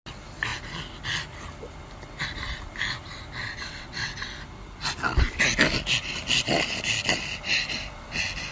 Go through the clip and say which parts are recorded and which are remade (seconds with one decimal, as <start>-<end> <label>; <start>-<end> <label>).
0.0-3.4 recorded; 3.4-4.3 remade; 4.3-8.5 recorded